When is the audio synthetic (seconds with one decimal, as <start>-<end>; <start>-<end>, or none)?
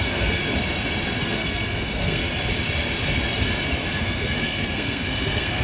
0.0-0.4; 1.2-2.2; 4.0-5.6